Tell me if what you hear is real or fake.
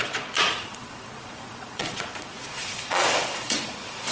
fake